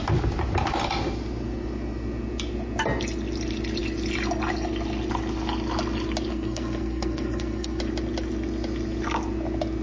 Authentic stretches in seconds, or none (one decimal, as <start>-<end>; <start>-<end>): 0.0-6.3; 7.8-9.8